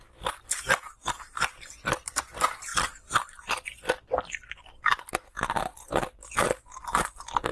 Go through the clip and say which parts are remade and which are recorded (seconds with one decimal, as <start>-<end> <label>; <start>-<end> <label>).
0.0-7.5 recorded